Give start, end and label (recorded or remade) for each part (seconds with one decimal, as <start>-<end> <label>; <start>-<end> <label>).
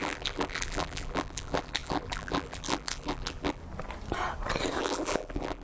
0.0-3.6 remade; 3.6-4.8 recorded; 4.8-5.6 remade